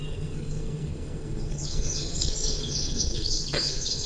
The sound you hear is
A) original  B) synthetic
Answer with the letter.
B